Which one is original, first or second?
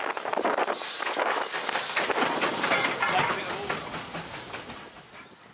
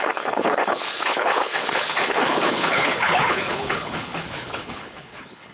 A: first